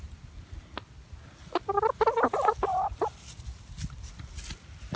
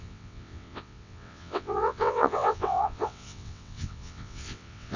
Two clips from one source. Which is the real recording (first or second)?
first